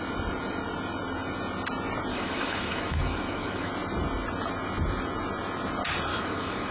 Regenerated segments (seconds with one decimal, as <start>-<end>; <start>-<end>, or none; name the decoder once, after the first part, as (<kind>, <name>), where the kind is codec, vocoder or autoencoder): 2.1-3.7 (autoencoder, DAC-VAE); 6.1-6.7